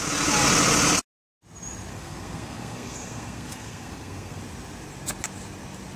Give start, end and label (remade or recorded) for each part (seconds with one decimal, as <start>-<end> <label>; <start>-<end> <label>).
0.0-1.9 recorded; 1.9-4.4 remade; 4.4-6.0 recorded